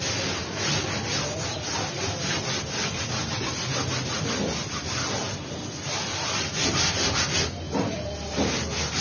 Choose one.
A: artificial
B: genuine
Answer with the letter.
B